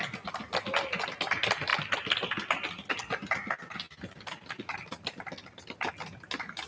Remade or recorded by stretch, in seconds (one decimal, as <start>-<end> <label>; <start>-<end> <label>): 0.0-6.7 recorded